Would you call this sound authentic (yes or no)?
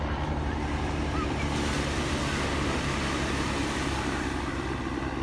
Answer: yes